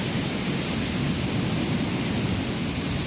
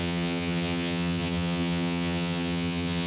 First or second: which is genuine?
first